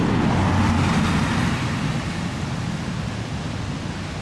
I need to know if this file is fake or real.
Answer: real